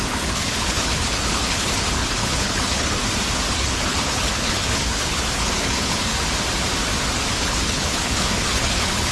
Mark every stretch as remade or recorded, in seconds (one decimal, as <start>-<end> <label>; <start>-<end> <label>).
0.0-3.0 remade; 3.0-3.5 recorded; 3.5-6.1 remade; 6.1-7.4 recorded; 7.4-9.1 remade